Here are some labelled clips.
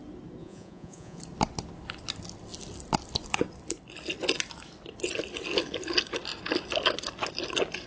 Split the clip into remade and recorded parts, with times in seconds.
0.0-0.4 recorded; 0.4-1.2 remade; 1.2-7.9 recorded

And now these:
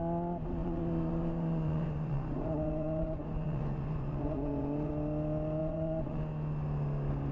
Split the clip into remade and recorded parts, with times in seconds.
0.0-0.6 recorded; 0.6-4.9 remade; 4.9-5.6 recorded; 5.6-6.2 remade; 6.2-7.3 recorded

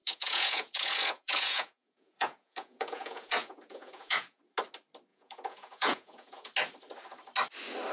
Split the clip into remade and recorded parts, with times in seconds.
0.0-4.4 remade; 4.4-5.1 recorded; 5.1-6.5 remade; 6.5-7.9 recorded

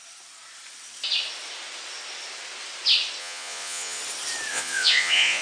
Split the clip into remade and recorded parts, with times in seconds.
0.0-3.2 recorded; 3.2-4.0 remade; 4.0-4.5 recorded; 4.5-5.4 remade

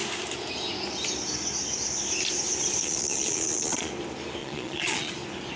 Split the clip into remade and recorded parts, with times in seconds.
0.0-2.8 recorded; 2.8-3.9 remade; 3.9-4.4 recorded; 4.4-5.1 remade; 5.1-5.6 recorded

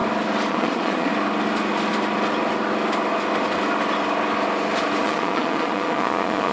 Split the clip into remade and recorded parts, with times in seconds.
0.0-0.5 recorded; 0.5-1.1 remade; 1.1-5.0 recorded; 5.0-6.5 remade

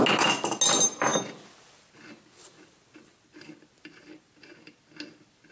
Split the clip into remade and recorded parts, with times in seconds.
0.0-5.5 recorded

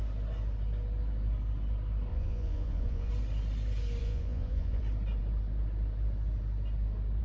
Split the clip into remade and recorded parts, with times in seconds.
0.0-2.1 recorded; 2.1-3.1 remade; 3.1-4.0 recorded; 4.0-4.8 remade; 4.8-7.2 recorded